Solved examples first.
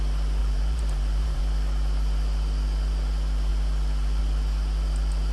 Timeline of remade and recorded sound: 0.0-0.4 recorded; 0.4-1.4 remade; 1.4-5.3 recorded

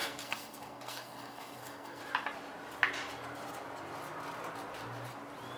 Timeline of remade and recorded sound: 0.0-2.0 remade; 2.0-5.6 recorded

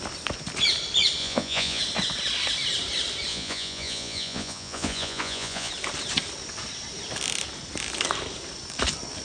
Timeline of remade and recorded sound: 0.0-1.2 recorded; 1.2-1.8 remade; 1.8-3.3 recorded; 3.3-5.7 remade; 5.7-9.2 recorded

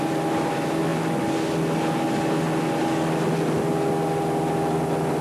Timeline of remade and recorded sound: 0.0-5.2 recorded

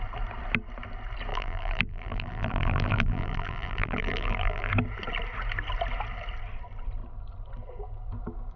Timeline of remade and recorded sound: 0.0-1.3 recorded; 1.3-4.7 remade; 4.7-8.6 recorded

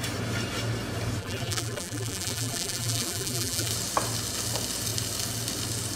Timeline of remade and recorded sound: 0.0-1.2 recorded; 1.2-3.7 remade; 3.7-6.0 recorded

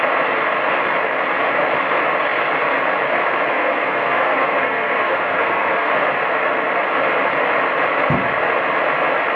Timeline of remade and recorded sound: 0.0-3.5 recorded; 3.5-5.9 remade; 5.9-9.4 recorded

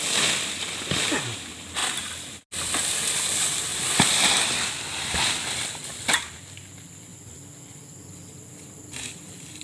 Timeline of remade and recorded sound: 0.0-3.7 recorded; 3.7-4.3 remade; 4.3-9.6 recorded